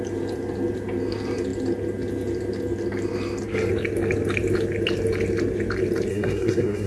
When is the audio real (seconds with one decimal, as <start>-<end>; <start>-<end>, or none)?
0.0-6.1